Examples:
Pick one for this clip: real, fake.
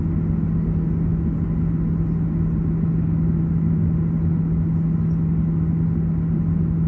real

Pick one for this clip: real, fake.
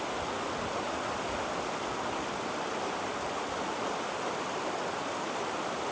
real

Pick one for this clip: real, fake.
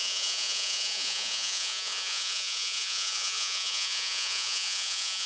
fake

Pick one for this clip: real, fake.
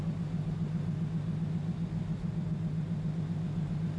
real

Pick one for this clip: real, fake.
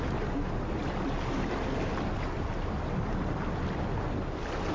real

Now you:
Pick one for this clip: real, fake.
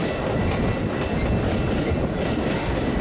real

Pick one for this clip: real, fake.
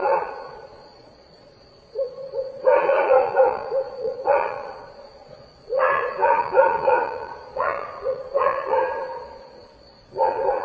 fake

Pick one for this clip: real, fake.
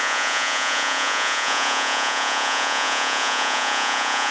fake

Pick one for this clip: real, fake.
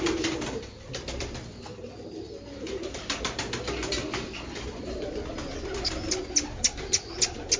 real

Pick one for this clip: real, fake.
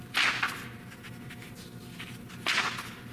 real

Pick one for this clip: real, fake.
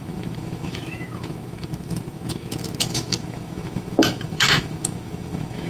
fake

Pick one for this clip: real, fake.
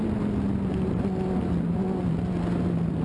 real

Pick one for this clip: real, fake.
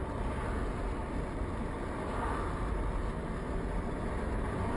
real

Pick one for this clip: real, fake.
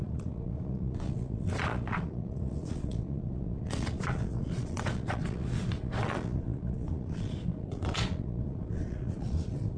fake